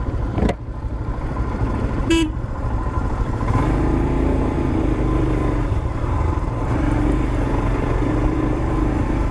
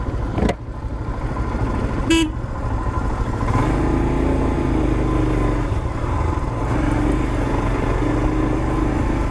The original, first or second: second